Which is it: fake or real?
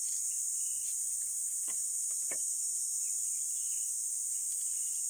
real